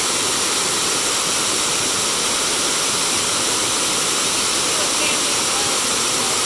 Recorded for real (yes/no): yes